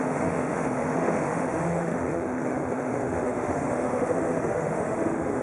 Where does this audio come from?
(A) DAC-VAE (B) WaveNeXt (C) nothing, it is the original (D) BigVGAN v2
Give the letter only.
A